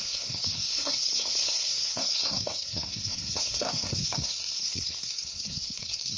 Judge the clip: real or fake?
fake